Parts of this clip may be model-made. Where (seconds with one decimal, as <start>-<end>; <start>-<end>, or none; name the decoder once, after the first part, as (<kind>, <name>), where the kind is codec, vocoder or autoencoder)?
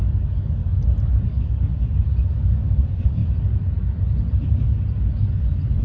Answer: 0.0-0.6 (codec, DAC); 1.1-1.7; 2.2-3.2